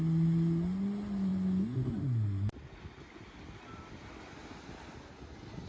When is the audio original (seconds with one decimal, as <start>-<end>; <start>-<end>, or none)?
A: 0.0-5.7